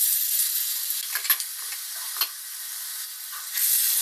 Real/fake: real